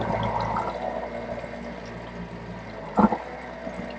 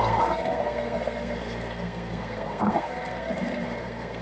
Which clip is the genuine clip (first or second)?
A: first